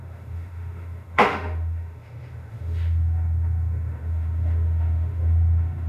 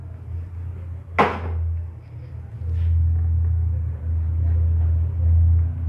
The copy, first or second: first